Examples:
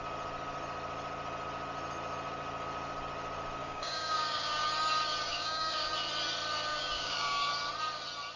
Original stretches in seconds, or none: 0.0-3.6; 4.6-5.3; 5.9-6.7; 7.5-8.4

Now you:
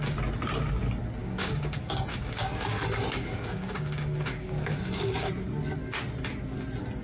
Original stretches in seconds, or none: 0.0-1.2; 5.3-7.0